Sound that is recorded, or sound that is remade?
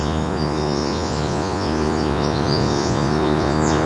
remade